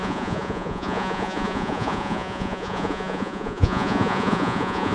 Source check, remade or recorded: remade